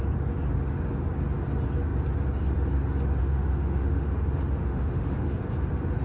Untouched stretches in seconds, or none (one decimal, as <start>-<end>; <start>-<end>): 0.0-3.2; 5.4-6.0